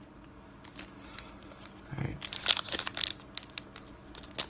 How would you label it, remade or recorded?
recorded